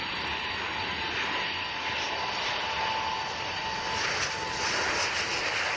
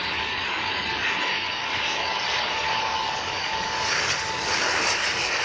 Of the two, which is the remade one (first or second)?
second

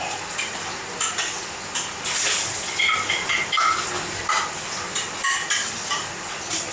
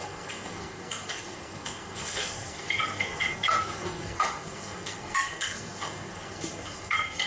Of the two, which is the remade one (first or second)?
second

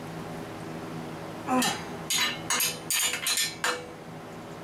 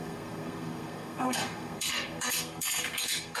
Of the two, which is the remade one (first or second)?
second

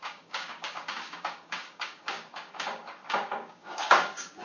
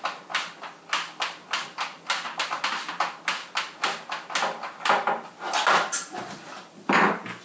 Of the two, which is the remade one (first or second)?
first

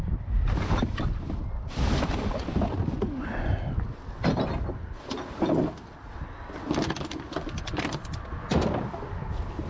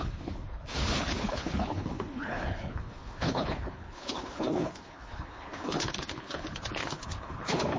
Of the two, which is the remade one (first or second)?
second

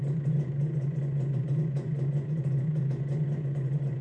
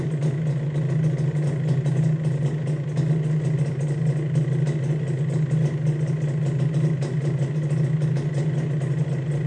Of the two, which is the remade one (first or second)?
first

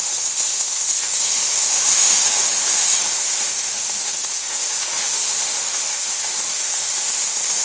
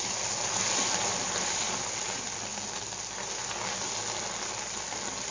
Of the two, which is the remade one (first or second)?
first